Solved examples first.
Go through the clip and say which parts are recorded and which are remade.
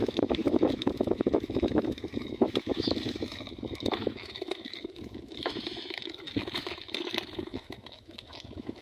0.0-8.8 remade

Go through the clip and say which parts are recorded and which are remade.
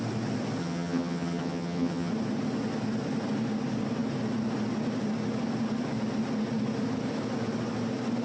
0.0-0.6 recorded; 0.6-2.1 remade; 2.1-8.2 recorded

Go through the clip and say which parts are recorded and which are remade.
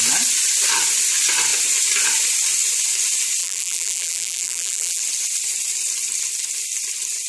0.0-3.4 recorded; 3.4-5.0 remade; 5.0-7.3 recorded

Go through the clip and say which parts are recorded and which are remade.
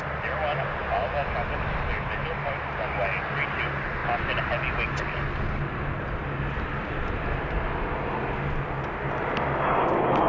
0.0-10.3 recorded